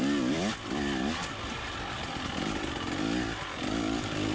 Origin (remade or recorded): recorded